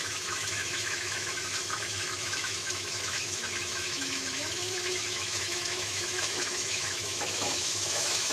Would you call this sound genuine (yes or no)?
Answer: no